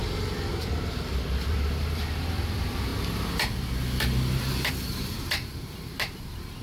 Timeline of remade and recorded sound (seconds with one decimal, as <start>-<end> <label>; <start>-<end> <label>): 0.0-1.5 recorded; 1.5-2.9 remade; 2.9-4.7 recorded; 4.7-6.6 remade